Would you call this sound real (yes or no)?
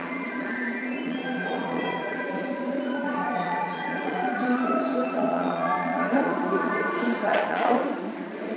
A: no